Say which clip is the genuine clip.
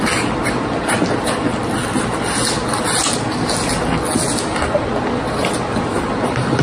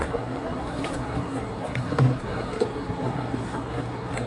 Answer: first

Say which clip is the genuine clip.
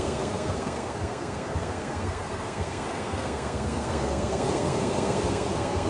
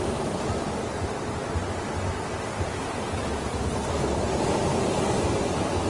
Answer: second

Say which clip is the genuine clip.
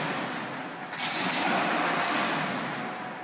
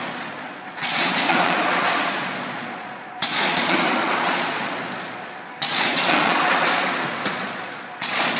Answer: first